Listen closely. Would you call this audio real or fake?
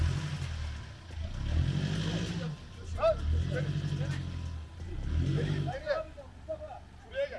real